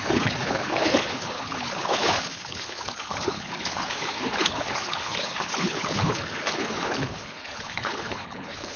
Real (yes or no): no